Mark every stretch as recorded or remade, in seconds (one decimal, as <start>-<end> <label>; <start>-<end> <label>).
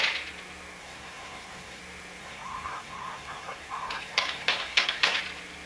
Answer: 0.0-0.8 recorded; 0.8-1.8 remade; 1.8-2.2 recorded; 2.2-5.2 remade; 5.2-5.7 recorded